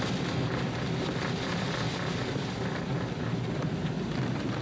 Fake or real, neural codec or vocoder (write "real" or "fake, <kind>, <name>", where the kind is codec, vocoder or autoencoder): real